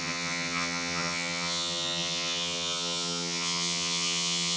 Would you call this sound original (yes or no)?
no